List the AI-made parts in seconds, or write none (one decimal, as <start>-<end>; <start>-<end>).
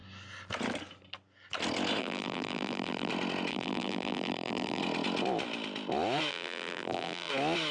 2.0-3.1; 3.5-4.8; 6.3-7.3